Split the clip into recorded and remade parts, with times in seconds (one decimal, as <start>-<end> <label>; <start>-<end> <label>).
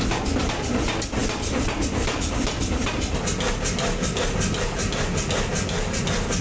0.0-6.4 recorded